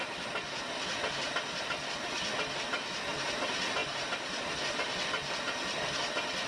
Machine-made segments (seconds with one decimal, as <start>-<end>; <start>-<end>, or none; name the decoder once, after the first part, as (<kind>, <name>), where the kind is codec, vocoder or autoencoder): 3.8-4.6 (vocoder, BigVGAN v2)